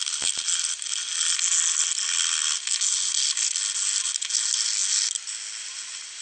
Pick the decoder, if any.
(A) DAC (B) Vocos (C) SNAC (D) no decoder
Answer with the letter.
D